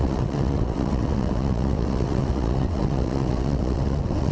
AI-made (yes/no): yes